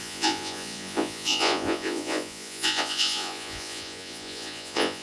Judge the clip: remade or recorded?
remade